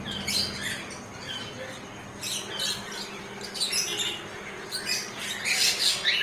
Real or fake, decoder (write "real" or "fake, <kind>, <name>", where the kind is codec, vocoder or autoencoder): real